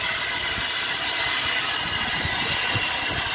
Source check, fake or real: real